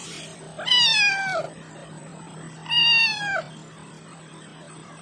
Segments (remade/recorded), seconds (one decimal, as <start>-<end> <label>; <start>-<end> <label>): 0.0-5.0 recorded